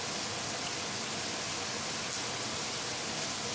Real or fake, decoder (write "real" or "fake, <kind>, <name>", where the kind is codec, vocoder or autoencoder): real